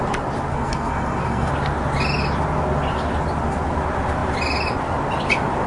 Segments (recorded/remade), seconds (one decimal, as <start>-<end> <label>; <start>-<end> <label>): 0.0-0.5 recorded; 0.5-1.5 remade; 1.5-5.7 recorded